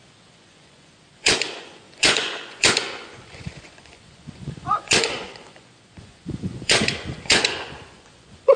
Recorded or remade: remade